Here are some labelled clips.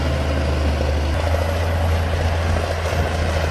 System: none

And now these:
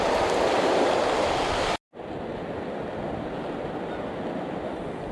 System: none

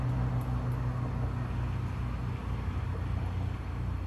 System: none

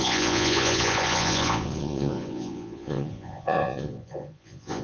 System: vocoder, Vocos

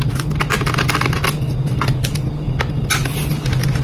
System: none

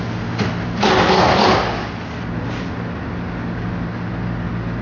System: none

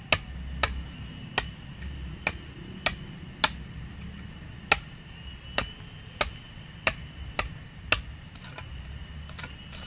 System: none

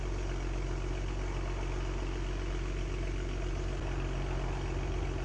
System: none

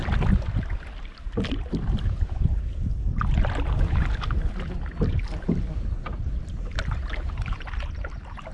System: none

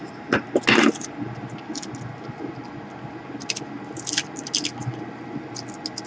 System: none